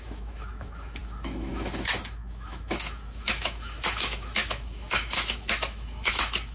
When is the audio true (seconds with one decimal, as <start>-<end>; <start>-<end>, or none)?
none